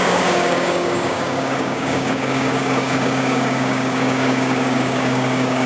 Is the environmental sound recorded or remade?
remade